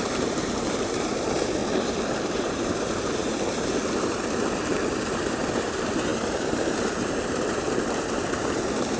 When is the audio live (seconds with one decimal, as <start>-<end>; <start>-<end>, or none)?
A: 1.6-2.1; 3.8-4.7